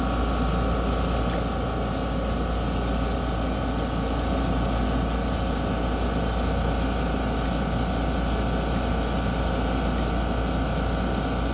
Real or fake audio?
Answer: real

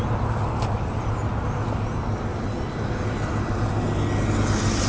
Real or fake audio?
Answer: real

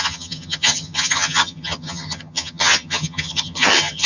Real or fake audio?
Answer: fake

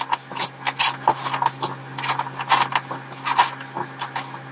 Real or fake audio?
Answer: real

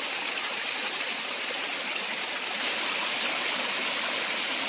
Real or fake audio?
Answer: real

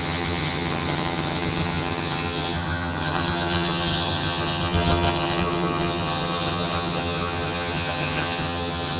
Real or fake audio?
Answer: fake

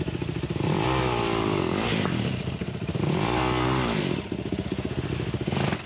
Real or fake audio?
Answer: real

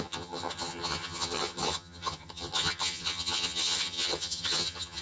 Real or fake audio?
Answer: fake